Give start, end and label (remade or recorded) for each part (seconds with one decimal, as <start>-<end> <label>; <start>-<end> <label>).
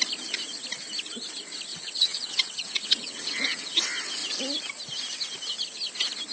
0.0-1.7 recorded; 1.7-3.8 remade; 3.8-6.3 recorded